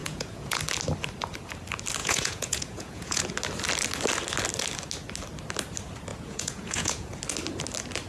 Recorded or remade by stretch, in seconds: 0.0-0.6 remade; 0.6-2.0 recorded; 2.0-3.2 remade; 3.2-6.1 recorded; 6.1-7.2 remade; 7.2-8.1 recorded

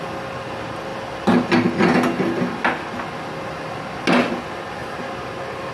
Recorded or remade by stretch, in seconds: 0.0-5.7 recorded

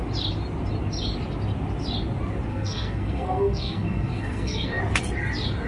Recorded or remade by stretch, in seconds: 0.0-2.5 recorded; 2.5-4.8 remade; 4.8-5.7 recorded